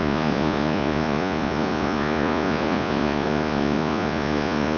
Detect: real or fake fake